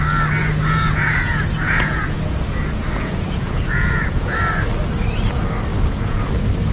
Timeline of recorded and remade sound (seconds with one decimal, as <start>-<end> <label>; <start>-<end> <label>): 0.0-0.4 recorded; 0.4-4.4 remade; 4.4-5.7 recorded; 5.7-6.3 remade; 6.3-6.7 recorded